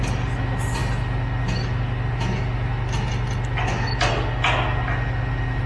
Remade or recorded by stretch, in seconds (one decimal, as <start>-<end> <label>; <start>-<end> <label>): 0.0-5.7 recorded